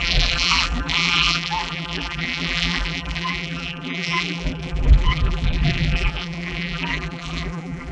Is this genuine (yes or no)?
no